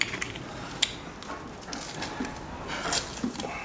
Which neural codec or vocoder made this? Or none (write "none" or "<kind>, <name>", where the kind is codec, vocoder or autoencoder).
none